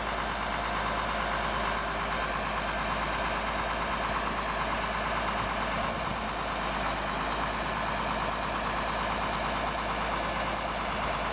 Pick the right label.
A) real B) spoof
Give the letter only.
A